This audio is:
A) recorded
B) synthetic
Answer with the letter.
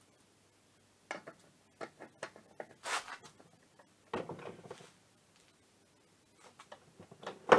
A